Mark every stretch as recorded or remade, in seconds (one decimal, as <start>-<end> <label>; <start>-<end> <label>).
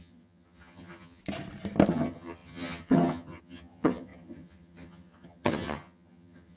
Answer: 0.0-1.2 remade; 1.2-1.9 recorded; 1.9-6.6 remade